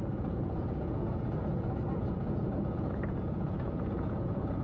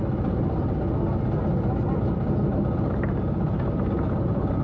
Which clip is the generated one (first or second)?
first